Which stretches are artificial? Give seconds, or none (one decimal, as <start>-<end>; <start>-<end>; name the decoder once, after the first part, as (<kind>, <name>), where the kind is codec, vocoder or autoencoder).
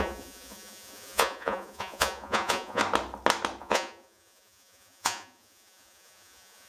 0.0-2.8 (vocoder, Vocos); 3.6-6.7